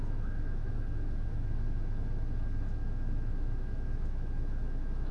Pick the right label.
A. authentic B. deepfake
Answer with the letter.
B